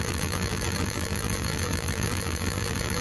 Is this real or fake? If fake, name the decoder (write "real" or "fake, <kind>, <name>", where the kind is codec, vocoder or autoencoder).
fake, vocoder, BigVGAN v2